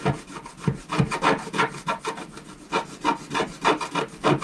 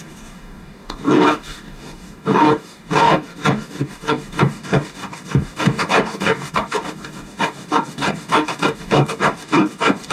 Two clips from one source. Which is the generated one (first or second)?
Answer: second